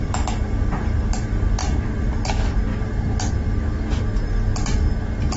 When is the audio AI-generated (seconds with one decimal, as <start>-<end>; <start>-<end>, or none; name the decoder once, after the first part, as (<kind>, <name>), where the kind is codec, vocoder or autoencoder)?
1.6-2.2 (vocoder, BigVGAN v2)